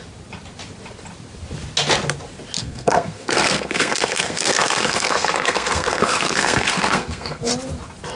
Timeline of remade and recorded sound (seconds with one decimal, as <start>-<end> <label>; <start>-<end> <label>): 0.0-2.6 recorded; 2.6-7.5 remade; 7.5-8.1 recorded

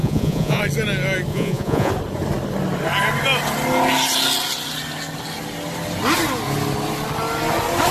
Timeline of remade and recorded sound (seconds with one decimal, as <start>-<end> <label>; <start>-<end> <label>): 0.0-0.6 remade; 0.6-1.3 recorded; 1.3-1.9 remade; 1.9-7.9 recorded

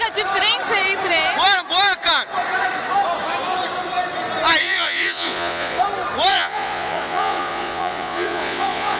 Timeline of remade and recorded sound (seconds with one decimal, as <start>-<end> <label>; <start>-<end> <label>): 0.0-4.6 recorded; 4.6-5.8 remade; 5.8-6.3 recorded; 6.3-9.0 remade

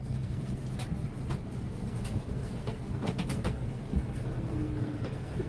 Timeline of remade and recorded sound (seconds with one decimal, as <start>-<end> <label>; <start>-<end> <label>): 0.0-0.6 remade; 0.6-1.6 recorded; 1.6-5.5 remade